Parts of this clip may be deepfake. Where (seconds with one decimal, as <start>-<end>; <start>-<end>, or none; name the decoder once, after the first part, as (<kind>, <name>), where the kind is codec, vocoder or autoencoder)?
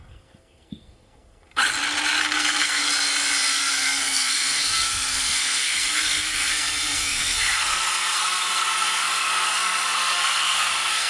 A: 0.0-1.6 (codec, SNAC); 2.2-2.8; 3.5-11.1